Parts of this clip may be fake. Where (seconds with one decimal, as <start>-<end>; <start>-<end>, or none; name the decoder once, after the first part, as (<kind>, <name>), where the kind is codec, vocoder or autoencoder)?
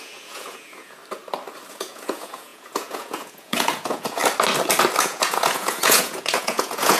0.0-1.0 (vocoder, Vocos); 1.7-4.2; 5.0-7.0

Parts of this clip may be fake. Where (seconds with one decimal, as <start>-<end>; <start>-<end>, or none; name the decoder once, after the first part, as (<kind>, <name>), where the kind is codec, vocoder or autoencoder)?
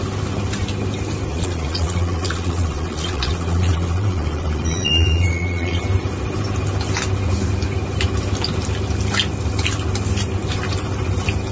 1.3-5.8 (vocoder, Vocos)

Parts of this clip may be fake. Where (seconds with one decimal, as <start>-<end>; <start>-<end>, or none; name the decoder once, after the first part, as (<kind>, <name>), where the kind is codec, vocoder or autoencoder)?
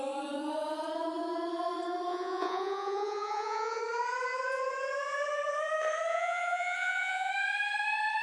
2.1-3.8 (vocoder, Vocos); 6.1-7.3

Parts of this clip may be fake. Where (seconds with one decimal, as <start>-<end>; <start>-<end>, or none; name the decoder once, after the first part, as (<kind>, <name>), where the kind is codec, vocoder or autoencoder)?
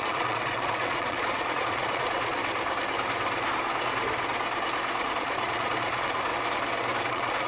0.0-2.4 (vocoder, Vocos); 5.0-6.3; 7.1-7.5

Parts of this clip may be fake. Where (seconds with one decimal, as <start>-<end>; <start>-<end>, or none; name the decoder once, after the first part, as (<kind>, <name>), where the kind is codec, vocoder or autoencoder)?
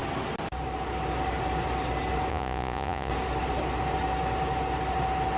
2.3-3.1 (vocoder, Vocos)